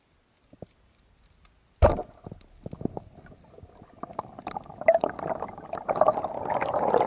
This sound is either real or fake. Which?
real